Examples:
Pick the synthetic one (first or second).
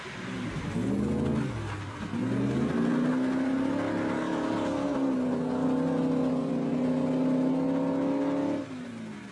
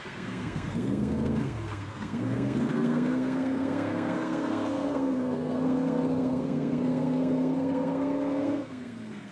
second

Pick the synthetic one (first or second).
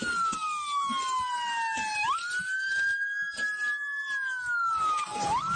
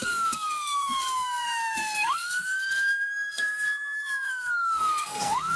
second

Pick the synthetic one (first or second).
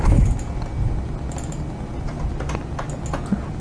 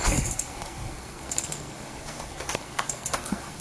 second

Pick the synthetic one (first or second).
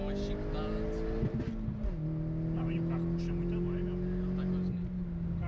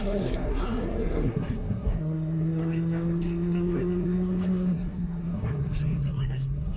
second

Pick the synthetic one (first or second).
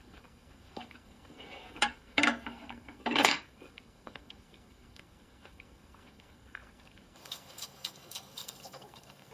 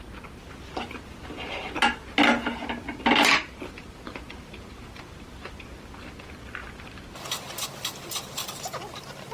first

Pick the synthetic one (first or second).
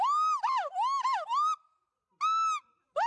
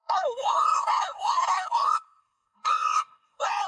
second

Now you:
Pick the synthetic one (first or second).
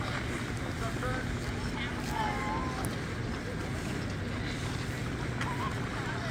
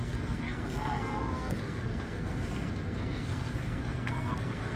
second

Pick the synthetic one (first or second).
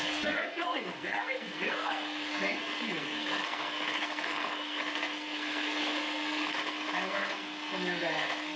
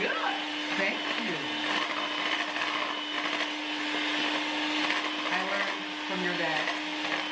first